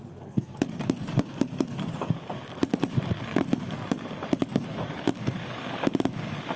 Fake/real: fake